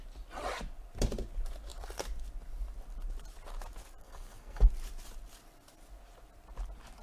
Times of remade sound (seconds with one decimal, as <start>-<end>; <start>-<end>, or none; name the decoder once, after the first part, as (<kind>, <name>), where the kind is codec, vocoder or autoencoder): 4.0-4.7 (codec, SNAC)